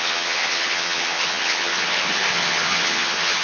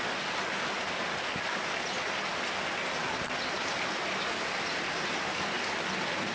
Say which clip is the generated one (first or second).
first